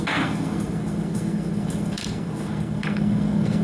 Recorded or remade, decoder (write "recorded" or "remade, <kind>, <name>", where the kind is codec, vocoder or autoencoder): remade, codec, SNAC